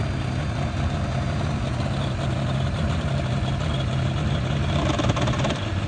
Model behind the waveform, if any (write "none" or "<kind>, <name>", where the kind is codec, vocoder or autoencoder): none